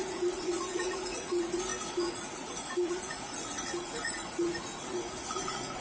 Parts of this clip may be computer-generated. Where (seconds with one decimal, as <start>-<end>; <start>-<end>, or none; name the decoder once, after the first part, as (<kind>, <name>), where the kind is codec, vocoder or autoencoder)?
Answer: 0.0-5.8 (vocoder, Vocos)